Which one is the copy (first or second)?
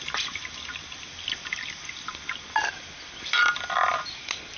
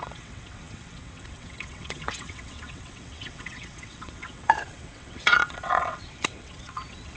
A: second